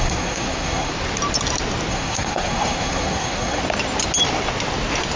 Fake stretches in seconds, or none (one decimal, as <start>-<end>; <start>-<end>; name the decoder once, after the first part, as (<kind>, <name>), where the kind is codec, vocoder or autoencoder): 0.0-0.9 (codec, SNAC); 1.9-3.6